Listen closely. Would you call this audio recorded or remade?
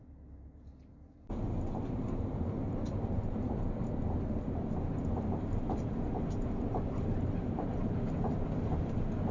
remade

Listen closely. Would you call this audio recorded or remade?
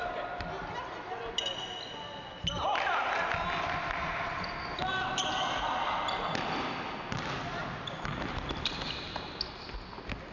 recorded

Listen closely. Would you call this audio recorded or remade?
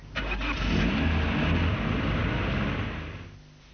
recorded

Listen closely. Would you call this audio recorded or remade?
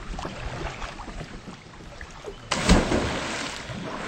recorded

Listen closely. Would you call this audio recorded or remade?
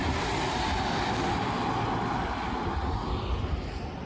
recorded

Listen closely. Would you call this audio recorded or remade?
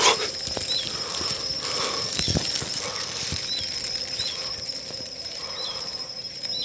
recorded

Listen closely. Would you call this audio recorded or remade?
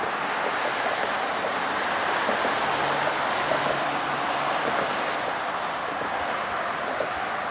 recorded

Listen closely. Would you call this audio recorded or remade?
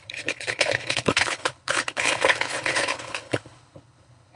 remade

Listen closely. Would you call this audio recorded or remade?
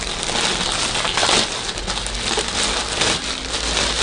recorded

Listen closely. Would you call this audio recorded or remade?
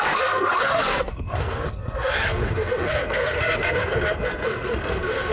remade